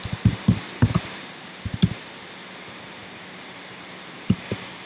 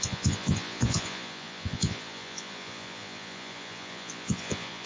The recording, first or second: first